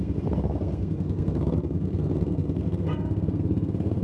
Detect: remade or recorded remade